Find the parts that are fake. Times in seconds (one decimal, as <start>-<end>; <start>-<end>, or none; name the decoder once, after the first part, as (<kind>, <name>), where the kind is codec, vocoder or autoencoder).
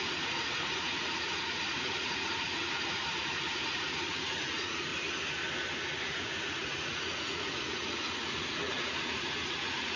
0.0-4.9 (vocoder, Vocos); 6.0-10.0